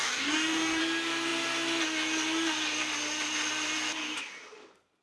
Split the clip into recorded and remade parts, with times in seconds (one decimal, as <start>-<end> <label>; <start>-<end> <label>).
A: 0.0-0.8 remade; 0.8-5.0 recorded